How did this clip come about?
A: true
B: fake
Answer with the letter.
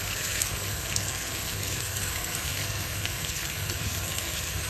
B